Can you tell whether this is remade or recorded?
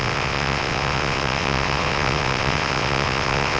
remade